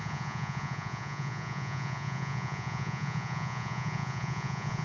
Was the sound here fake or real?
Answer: fake